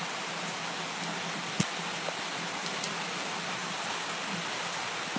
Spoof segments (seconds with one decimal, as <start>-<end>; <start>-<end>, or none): none